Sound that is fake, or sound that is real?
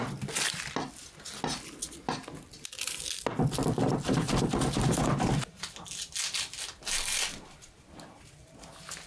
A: real